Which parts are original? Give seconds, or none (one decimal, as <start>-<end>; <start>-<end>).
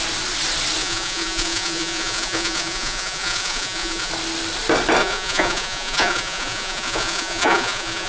0.0-0.8; 4.1-5.0